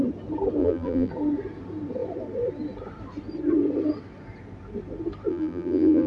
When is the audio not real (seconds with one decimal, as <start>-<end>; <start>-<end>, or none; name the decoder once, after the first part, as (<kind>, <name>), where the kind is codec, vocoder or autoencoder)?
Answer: 0.6-1.1 (vocoder, BigVGAN v2); 5.3-6.1

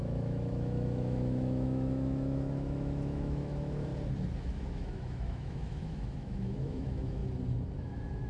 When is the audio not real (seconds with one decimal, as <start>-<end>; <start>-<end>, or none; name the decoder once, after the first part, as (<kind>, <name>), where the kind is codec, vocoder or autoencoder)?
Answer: 0.0-3.9 (autoencoder, DAC-VAE); 4.4-7.2; 7.8-8.3

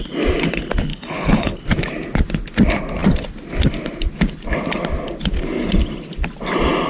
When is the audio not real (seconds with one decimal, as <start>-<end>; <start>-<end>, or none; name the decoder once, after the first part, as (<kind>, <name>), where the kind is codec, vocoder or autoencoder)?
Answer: 0.9-1.6 (codec, HILCodec)

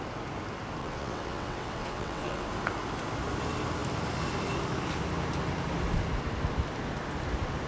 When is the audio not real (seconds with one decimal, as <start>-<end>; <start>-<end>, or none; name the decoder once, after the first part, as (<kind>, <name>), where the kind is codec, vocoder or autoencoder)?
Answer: 0.8-2.5 (vocoder, WaveNeXt)

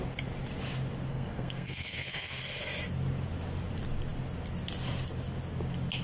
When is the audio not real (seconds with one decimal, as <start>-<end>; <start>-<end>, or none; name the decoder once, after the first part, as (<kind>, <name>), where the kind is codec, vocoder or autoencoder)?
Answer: 1.1-2.4 (codec, SNAC)

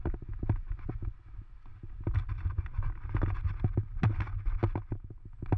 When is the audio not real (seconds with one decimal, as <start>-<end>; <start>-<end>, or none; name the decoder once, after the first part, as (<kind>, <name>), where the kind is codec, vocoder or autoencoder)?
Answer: none